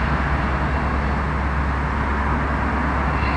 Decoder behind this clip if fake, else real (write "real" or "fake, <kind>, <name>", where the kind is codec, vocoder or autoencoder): real